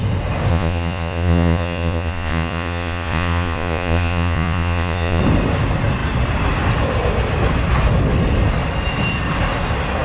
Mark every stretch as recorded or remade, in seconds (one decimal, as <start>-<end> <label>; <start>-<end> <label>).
0.0-0.5 recorded; 0.5-5.2 remade; 5.2-10.0 recorded